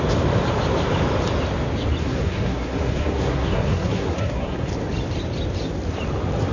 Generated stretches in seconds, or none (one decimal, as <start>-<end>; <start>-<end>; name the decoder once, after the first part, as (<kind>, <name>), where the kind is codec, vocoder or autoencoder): 2.0-4.7 (codec, SNAC)